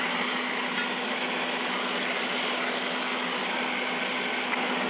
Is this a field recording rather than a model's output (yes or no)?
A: yes